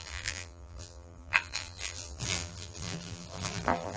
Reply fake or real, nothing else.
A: fake